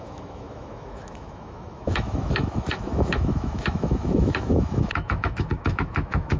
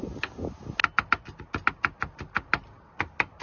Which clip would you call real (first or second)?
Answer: second